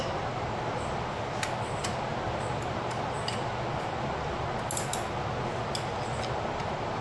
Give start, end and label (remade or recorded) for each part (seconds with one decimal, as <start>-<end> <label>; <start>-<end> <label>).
0.0-7.0 recorded